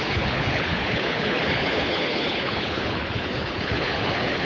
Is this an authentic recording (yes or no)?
no